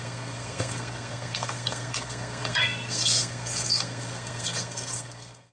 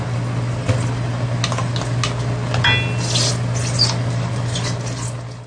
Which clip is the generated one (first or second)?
first